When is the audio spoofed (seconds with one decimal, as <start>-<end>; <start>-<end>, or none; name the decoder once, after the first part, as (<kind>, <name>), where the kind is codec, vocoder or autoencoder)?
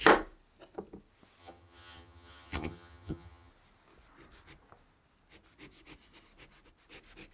1.4-3.5 (vocoder, HiFi-GAN)